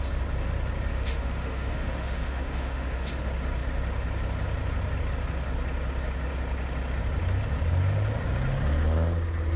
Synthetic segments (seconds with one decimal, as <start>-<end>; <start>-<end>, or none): 0.9-3.1